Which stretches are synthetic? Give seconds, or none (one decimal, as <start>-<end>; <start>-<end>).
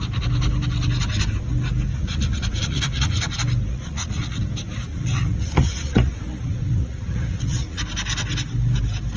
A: 1.9-3.3; 3.7-4.4; 4.9-7.8